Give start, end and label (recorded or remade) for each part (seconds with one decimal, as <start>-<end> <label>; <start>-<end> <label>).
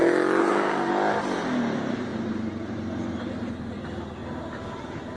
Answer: 0.0-0.4 recorded; 0.4-0.9 remade; 0.9-5.2 recorded